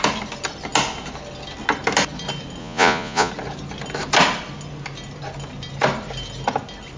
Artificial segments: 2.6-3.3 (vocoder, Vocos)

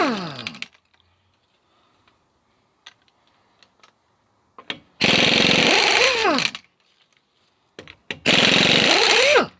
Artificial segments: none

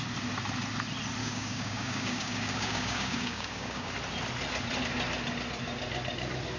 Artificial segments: 1.2-3.9 (codec, DAC)

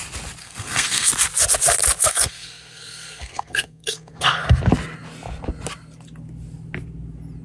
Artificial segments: 0.4-1.1 (codec, SNAC); 2.0-4.6

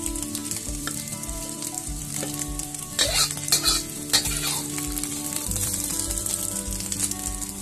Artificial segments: 0.4-2.8 (vocoder, BigVGAN v2); 5.1-6.3

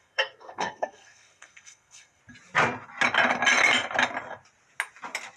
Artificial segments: 0.0-2.2 (codec, SNAC)

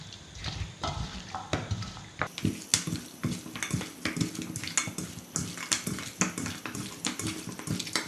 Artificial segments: 0.0-2.7 (vocoder, BigVGAN v2); 6.6-8.1

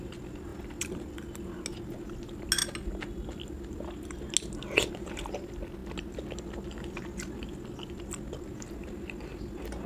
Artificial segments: none